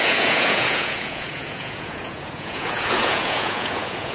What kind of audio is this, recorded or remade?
remade